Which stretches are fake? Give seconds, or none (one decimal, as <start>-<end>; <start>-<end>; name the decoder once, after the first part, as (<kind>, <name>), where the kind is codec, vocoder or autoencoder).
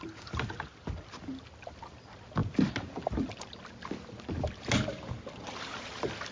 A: none